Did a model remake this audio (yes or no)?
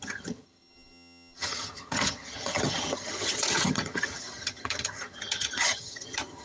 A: yes